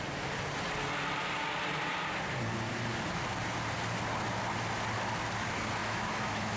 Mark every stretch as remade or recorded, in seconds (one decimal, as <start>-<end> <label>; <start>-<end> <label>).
0.0-5.8 recorded; 5.8-6.6 remade